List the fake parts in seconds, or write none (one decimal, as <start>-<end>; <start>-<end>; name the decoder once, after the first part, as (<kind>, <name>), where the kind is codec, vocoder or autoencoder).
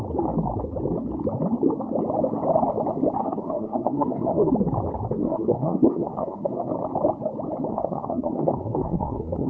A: 3.2-4.5 (codec, SNAC); 5.2-6.7; 7.7-9.5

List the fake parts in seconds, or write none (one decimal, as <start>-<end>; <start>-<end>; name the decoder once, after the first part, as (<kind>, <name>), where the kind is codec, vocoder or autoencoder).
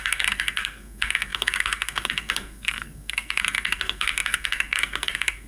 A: 0.0-5.5 (codec, SNAC)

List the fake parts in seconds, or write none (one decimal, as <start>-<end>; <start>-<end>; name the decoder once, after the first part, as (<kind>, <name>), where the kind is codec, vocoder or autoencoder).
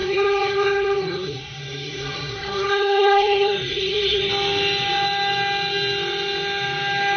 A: 0.0-4.3 (codec, SNAC)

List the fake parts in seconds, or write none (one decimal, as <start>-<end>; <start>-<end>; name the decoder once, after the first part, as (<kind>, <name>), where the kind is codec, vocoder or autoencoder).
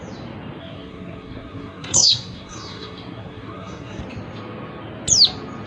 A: 0.6-4.0 (codec, SNAC)